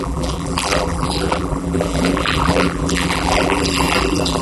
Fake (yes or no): yes